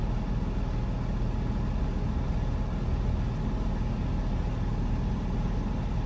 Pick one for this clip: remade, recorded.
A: recorded